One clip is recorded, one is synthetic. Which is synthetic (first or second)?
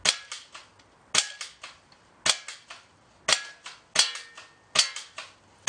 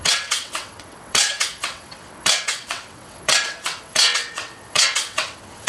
second